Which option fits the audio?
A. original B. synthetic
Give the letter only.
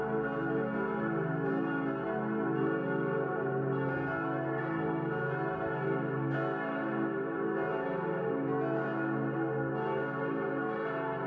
A